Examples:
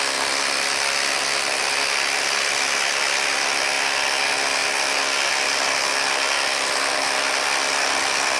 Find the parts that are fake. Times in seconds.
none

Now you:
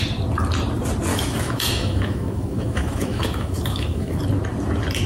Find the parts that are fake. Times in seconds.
1.1-4.2 (autoencoder, DAC-VAE)

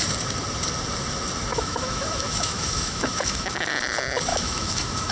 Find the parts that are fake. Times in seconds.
1.5-3.7 (autoencoder, DAC-VAE); 4.3-5.1

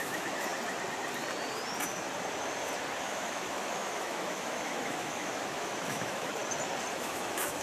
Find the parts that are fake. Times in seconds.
0.0-0.5 (autoencoder, DAC-VAE); 3.0-6.4; 6.9-7.6